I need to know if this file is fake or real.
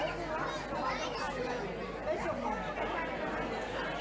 real